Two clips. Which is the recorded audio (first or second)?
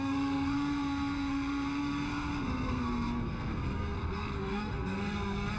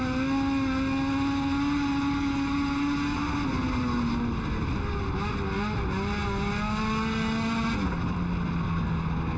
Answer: second